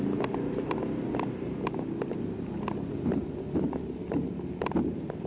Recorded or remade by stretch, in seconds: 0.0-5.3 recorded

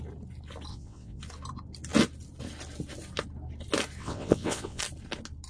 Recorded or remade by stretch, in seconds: 0.0-0.7 recorded; 0.7-1.2 remade; 1.2-4.0 recorded; 4.0-4.8 remade; 4.8-5.5 recorded

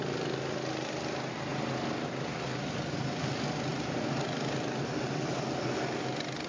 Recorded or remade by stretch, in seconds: 0.0-1.5 recorded; 1.5-3.3 remade; 3.3-3.7 recorded; 3.7-5.7 remade; 5.7-6.5 recorded

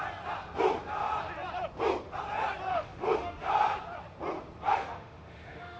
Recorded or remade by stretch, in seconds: 0.0-2.7 recorded; 2.7-3.5 remade; 3.5-4.8 recorded; 4.8-5.8 remade

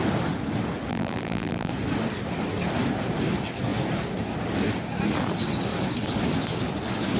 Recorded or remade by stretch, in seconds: 0.0-0.9 recorded; 0.9-1.7 remade; 1.7-7.2 recorded